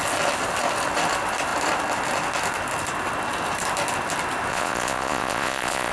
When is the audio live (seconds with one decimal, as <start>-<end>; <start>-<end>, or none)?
0.0-4.5